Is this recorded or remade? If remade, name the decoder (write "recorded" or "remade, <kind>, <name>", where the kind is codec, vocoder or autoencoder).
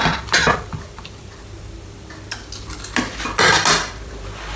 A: recorded